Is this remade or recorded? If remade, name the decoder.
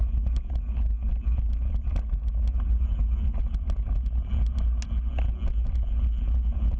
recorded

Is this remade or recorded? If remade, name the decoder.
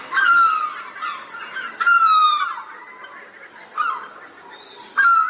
recorded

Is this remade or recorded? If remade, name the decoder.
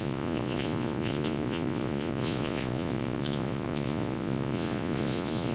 remade, vocoder, Vocos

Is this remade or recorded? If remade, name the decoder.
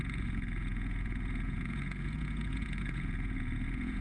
remade, vocoder, Vocos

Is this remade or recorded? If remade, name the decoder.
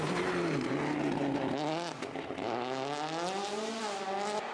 recorded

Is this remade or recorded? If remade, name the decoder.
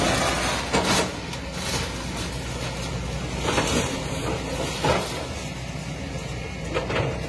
recorded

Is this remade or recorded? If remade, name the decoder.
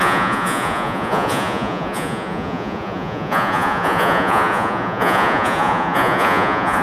remade, vocoder, Vocos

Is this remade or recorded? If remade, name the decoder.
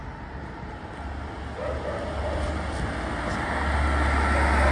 recorded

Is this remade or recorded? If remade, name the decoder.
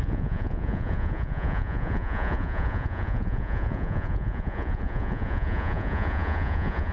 remade, vocoder, Vocos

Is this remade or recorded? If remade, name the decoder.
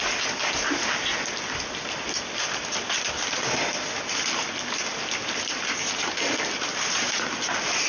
recorded